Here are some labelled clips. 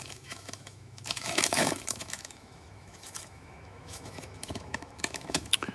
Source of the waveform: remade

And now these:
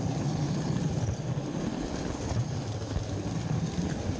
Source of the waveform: recorded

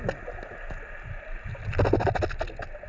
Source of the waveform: recorded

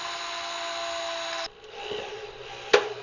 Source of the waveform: recorded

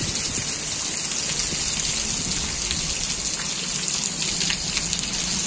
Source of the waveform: recorded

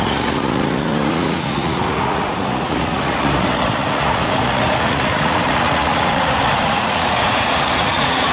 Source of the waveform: remade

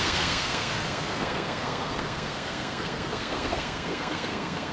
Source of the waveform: remade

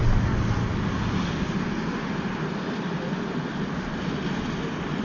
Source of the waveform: recorded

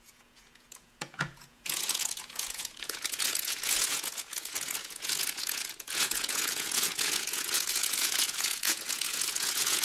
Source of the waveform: remade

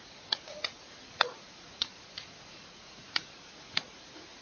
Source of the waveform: remade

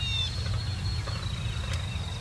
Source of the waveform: recorded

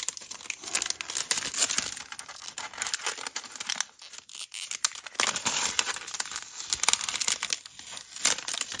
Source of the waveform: recorded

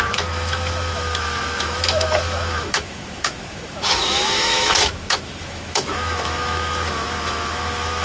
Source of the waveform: remade